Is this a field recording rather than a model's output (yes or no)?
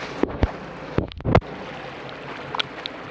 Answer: yes